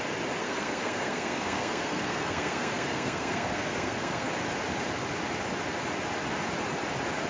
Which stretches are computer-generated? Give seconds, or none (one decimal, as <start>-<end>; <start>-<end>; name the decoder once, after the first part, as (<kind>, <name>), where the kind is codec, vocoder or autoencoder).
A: 0.4-4.3 (codec, SNAC)